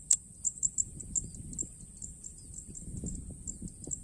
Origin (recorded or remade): recorded